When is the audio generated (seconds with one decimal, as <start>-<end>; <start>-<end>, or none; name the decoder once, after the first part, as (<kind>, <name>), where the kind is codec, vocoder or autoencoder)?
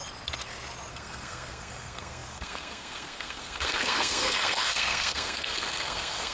0.9-6.3 (codec, SNAC)